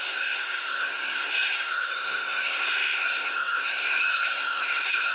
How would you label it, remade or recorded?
remade